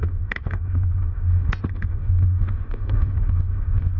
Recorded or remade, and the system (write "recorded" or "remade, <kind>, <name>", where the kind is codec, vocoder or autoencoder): remade, autoencoder, DAC-VAE